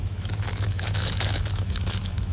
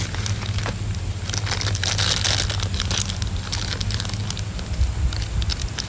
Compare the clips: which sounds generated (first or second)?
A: first